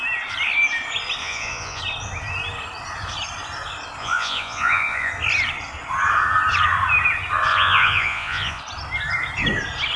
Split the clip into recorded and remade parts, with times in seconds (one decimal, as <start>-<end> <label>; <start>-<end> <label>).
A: 0.0-1.2 recorded; 1.2-1.8 remade; 1.8-4.0 recorded; 4.0-5.1 remade; 5.1-7.5 recorded; 7.5-8.6 remade; 8.6-10.0 recorded